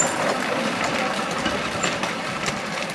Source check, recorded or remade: remade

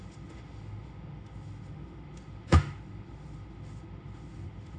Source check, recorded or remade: remade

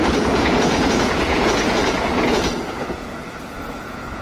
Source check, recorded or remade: remade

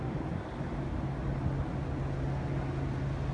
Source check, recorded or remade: recorded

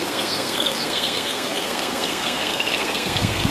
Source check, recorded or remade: remade